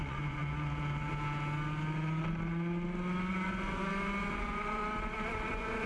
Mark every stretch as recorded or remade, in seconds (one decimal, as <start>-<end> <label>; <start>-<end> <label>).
0.0-0.4 remade; 0.4-3.3 recorded; 3.3-3.8 remade; 3.8-4.3 recorded; 4.3-4.8 remade; 4.8-5.5 recorded; 5.5-5.9 remade